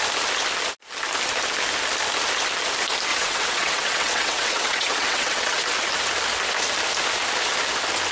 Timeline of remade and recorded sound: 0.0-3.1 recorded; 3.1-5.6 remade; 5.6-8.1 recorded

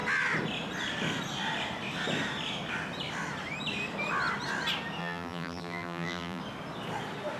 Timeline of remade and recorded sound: 0.0-5.0 recorded; 5.0-6.4 remade; 6.4-7.4 recorded

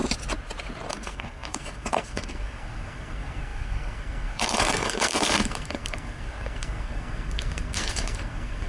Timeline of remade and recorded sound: 0.0-0.9 recorded; 0.9-8.7 remade

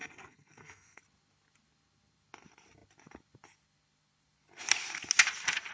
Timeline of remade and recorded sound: 0.0-1.0 remade; 1.0-5.7 recorded